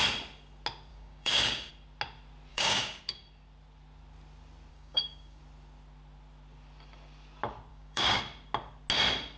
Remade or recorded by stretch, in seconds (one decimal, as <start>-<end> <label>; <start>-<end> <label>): 0.0-0.9 recorded; 0.9-1.7 remade; 1.7-2.5 recorded; 2.5-3.0 remade; 3.0-4.7 recorded; 4.7-5.4 remade; 5.4-7.7 recorded; 7.7-8.2 remade; 8.2-9.4 recorded